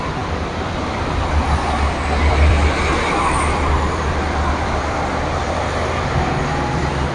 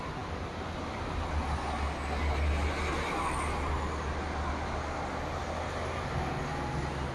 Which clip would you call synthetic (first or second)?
first